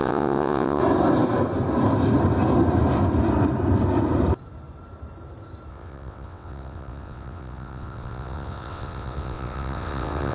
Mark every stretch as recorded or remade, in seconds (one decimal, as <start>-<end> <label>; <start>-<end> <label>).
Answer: 0.0-0.8 remade; 0.8-5.7 recorded; 5.7-10.3 remade